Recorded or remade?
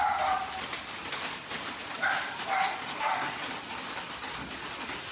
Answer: recorded